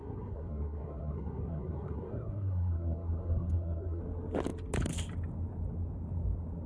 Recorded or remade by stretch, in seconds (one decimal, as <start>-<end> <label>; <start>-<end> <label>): 0.0-4.0 remade; 4.0-6.7 recorded